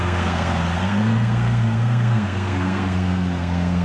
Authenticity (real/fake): fake